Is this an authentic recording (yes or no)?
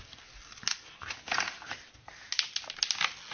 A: yes